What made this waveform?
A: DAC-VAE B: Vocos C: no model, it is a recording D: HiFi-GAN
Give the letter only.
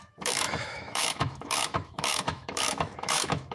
A